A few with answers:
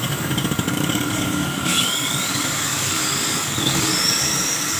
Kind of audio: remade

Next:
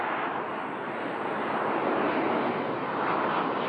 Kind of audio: recorded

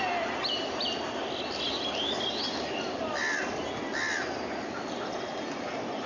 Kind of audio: recorded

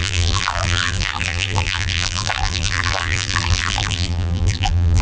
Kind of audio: remade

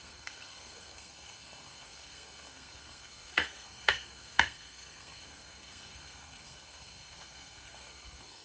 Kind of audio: remade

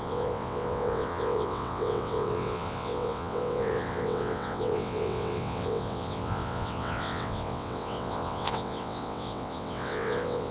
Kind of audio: remade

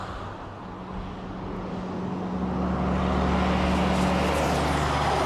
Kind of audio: recorded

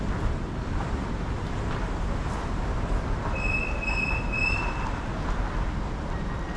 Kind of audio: recorded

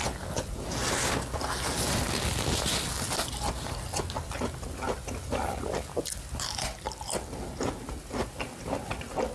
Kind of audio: recorded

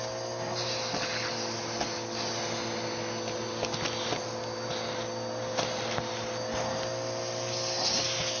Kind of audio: recorded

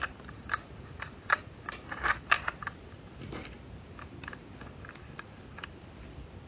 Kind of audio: recorded